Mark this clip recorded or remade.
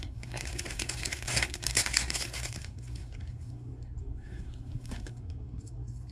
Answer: remade